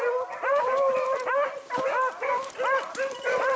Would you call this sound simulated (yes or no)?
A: no